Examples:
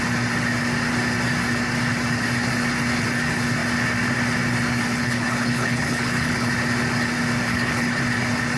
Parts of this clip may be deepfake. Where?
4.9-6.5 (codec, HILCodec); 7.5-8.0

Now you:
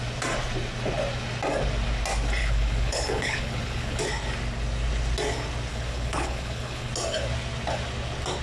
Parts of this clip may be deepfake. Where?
2.4-4.0 (codec, HILCodec); 5.7-6.9

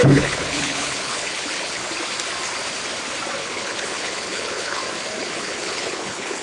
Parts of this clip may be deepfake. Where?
0.0-1.8 (codec, HILCodec); 3.4-4.8; 5.3-6.4

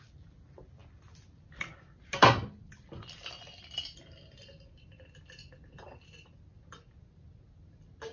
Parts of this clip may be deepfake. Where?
none